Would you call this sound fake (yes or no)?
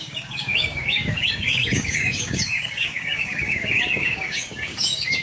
yes